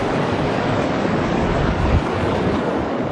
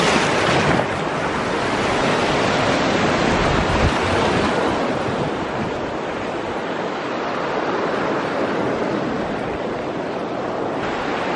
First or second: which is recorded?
second